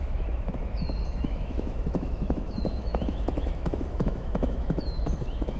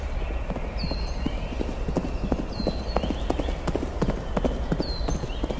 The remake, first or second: first